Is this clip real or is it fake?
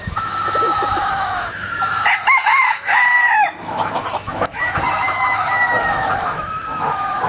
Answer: fake